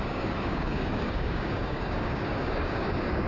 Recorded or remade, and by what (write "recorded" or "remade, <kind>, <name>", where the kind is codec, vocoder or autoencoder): remade, codec, DAC